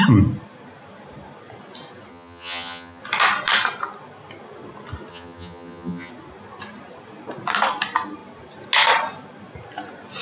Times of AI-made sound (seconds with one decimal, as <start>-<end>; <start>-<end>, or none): 2.1-3.0; 5.1-6.1